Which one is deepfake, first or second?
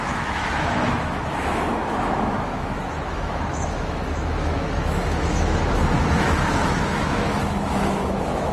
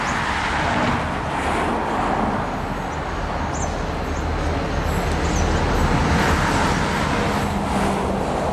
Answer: first